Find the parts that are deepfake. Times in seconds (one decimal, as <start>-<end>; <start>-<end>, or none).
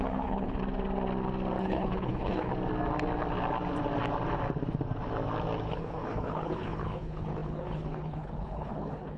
0.0-0.6; 1.6-2.5; 5.7-9.2